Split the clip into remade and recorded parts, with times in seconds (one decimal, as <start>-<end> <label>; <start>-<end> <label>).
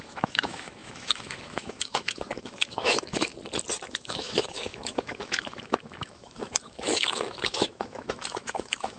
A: 0.0-3.3 remade; 3.3-3.9 recorded; 3.9-9.0 remade